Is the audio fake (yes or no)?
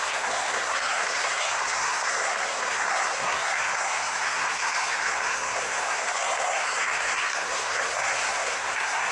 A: yes